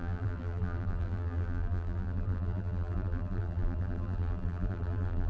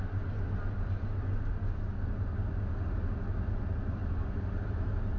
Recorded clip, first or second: second